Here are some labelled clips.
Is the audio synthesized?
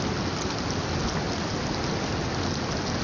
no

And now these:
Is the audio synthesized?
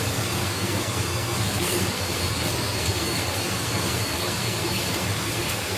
yes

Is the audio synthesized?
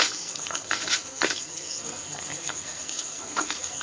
yes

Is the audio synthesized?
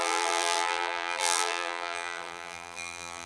yes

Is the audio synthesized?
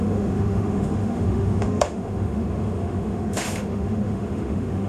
yes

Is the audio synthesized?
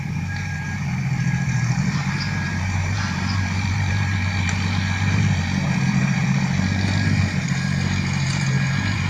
yes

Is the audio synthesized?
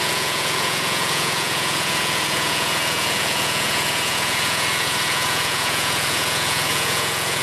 yes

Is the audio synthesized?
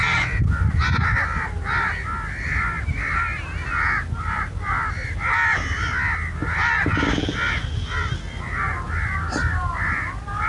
no